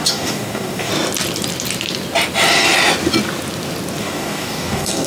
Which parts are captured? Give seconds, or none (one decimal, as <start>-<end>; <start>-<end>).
0.9-4.0